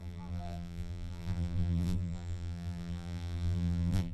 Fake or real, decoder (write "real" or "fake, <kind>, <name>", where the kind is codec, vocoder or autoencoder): fake, vocoder, BigVGAN v2